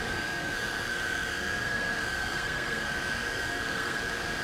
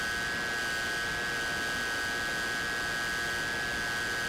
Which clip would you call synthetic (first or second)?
first